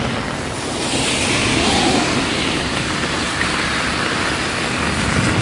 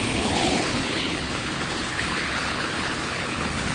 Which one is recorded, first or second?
first